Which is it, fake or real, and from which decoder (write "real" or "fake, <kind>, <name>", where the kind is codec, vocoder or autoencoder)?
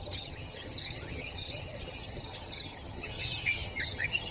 fake, vocoder, HiFi-GAN